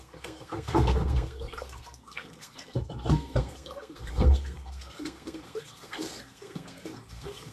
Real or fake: fake